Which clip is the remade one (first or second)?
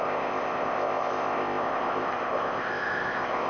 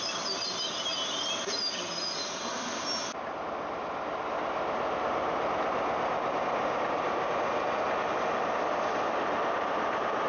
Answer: first